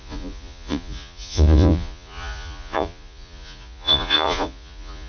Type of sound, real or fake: fake